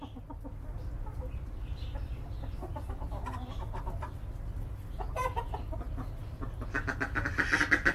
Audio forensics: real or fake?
real